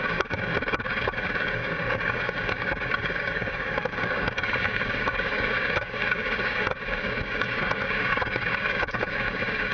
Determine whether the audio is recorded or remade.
remade